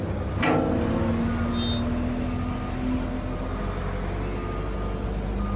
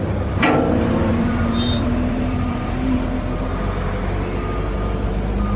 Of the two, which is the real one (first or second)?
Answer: first